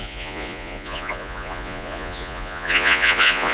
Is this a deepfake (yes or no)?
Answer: yes